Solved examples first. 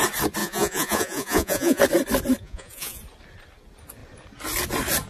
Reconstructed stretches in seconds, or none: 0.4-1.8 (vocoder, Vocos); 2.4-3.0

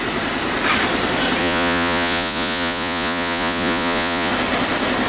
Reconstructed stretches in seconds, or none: 1.4-4.3 (vocoder, Vocos)

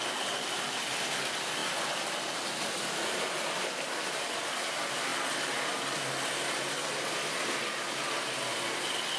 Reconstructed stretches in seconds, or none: none

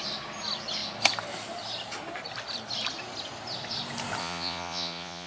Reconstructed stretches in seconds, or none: 4.2-5.3 (vocoder, Vocos)